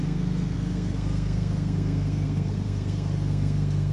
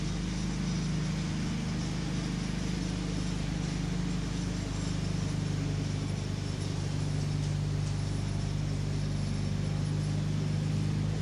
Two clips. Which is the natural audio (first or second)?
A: second